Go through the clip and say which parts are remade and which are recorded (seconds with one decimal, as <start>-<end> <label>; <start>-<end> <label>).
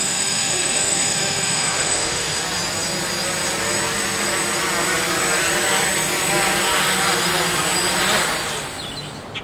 0.0-2.4 remade; 2.4-9.4 recorded